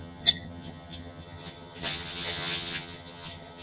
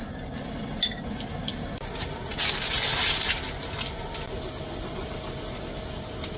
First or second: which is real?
second